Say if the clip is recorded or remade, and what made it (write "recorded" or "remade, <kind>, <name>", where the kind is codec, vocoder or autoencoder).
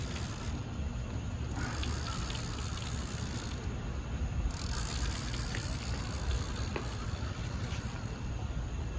remade, vocoder, BigVGAN v2